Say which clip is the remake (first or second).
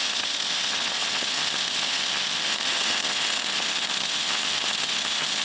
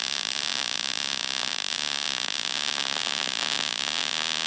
first